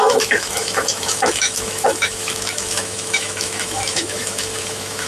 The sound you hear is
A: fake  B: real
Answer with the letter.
A